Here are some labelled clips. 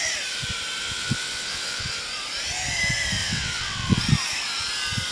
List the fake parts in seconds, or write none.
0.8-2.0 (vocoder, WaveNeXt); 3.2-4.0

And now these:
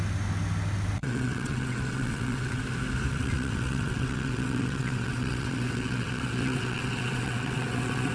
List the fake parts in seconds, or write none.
1.0-2.6 (vocoder, WaveNeXt); 3.1-8.1

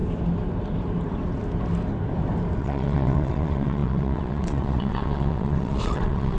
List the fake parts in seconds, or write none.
2.6-6.4 (vocoder, WaveNeXt)

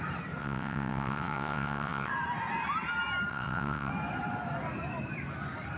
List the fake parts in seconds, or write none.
0.4-2.1 (vocoder, WaveNeXt); 3.3-3.9

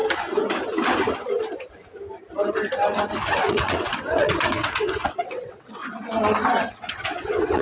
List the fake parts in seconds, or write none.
3.5-5.8 (vocoder, WaveNeXt); 6.7-7.6

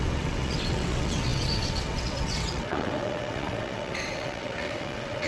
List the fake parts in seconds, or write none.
0.0-5.3 (vocoder, WaveNeXt)

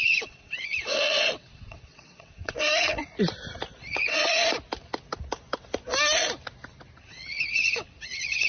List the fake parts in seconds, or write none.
0.0-3.0 (vocoder, WaveNeXt); 3.8-4.4; 7.0-8.5

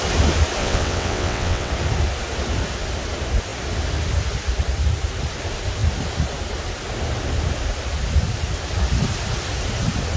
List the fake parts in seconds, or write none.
0.6-1.7 (vocoder, WaveNeXt)